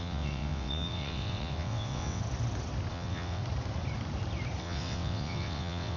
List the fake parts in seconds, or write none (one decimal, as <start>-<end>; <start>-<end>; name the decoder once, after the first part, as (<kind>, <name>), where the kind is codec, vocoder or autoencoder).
0.0-2.2 (vocoder, WaveNeXt); 2.9-3.4; 4.6-6.0